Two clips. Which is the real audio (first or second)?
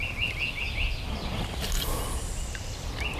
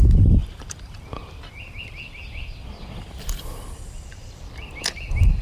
first